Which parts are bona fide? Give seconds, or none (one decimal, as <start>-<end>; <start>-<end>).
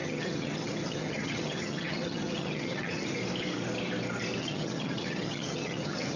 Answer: 3.2-4.4